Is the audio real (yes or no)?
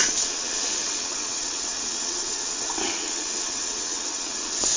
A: no